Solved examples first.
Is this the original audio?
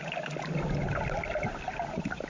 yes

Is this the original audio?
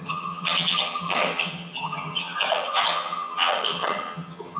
no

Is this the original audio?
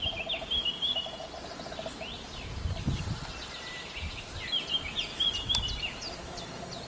yes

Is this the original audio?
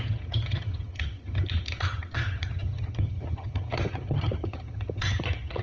no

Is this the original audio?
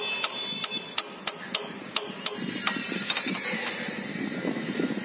yes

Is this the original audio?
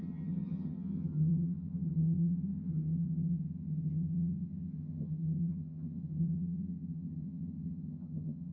no